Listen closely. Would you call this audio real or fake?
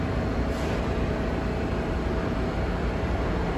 fake